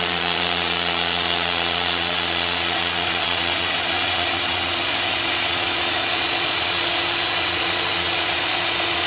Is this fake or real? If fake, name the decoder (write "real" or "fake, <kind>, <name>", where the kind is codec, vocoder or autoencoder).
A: fake, vocoder, Vocos